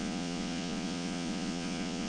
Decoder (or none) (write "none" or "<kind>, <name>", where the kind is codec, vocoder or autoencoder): vocoder, Vocos